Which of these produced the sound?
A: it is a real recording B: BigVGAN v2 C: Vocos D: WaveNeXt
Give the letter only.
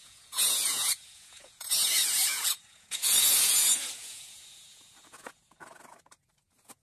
C